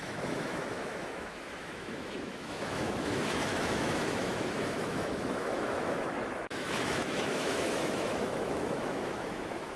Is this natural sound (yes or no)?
no